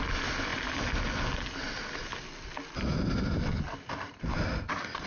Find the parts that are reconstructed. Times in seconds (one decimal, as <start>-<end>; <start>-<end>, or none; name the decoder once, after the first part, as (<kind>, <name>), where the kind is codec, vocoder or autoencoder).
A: none